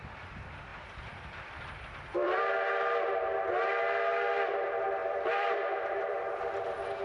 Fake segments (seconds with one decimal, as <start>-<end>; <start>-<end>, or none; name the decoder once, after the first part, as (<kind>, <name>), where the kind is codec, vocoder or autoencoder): 0.7-2.4 (vocoder, BigVGAN v2); 5.0-6.4